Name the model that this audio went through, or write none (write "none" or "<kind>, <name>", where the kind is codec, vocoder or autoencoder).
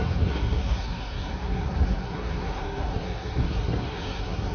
codec, SNAC